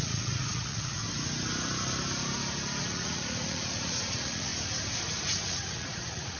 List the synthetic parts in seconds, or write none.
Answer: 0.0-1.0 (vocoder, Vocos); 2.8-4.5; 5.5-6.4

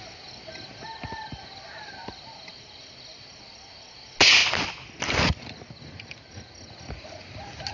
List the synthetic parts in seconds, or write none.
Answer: none

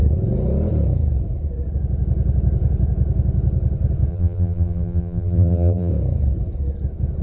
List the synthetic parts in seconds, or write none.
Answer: 4.1-5.9 (vocoder, BigVGAN v2)